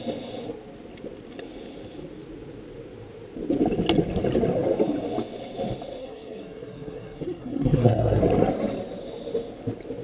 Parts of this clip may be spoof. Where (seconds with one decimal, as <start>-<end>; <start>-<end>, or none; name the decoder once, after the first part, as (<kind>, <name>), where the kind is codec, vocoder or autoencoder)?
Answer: 6.0-8.2 (codec, SNAC)